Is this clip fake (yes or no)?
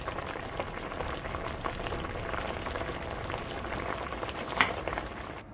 yes